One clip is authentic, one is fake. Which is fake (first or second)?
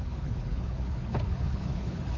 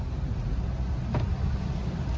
first